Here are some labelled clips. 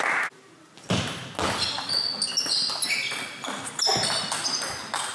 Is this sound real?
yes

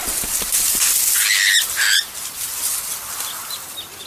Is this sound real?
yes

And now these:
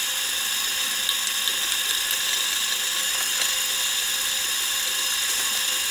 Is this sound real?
yes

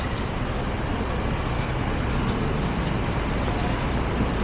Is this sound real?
yes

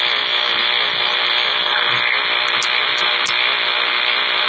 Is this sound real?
yes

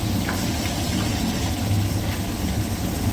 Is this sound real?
yes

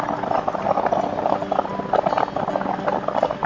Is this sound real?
yes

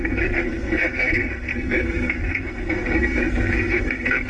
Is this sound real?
no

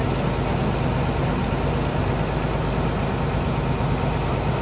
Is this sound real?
yes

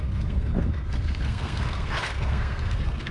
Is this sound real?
no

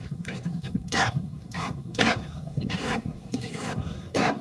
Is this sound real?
no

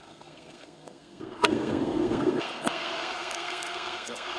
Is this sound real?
no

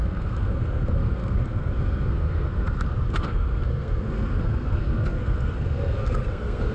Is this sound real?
no